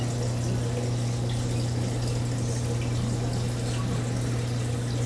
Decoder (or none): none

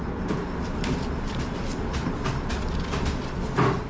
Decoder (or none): none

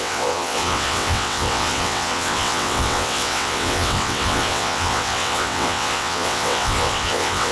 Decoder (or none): vocoder, WaveNeXt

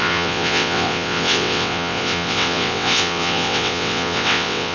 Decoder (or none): vocoder, WaveNeXt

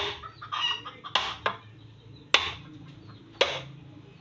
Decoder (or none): none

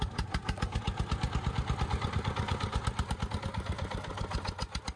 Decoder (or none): none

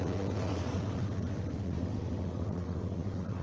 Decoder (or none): vocoder, WaveNeXt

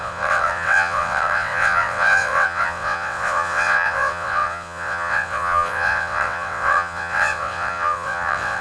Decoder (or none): vocoder, WaveNeXt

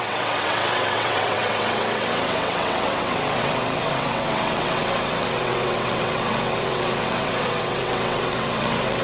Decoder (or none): vocoder, WaveNeXt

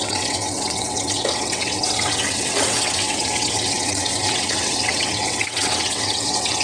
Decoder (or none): vocoder, WaveNeXt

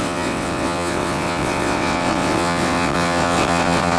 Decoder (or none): vocoder, WaveNeXt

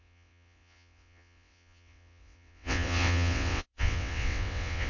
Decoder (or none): vocoder, WaveNeXt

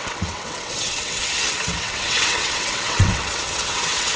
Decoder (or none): vocoder, WaveNeXt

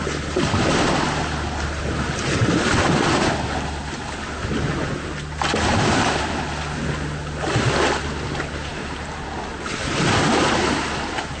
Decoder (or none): none